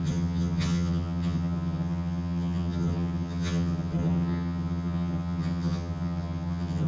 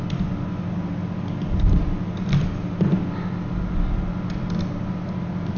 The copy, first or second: first